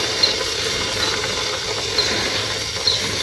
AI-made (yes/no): no